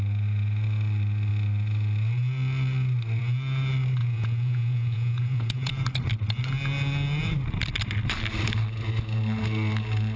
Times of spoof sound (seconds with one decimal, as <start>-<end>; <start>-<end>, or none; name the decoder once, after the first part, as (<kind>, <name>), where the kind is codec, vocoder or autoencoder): 4.0-5.7 (vocoder, Vocos)